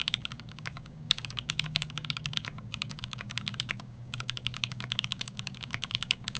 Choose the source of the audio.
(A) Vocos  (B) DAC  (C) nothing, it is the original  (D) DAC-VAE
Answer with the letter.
B